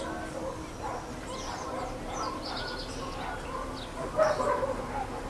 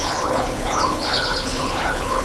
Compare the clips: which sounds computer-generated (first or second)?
second